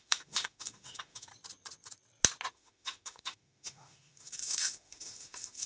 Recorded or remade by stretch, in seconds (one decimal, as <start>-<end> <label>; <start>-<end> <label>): 0.0-1.3 remade; 1.3-2.5 recorded; 2.5-5.7 remade